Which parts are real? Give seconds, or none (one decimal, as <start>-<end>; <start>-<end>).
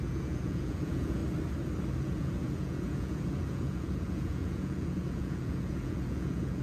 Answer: 1.2-2.0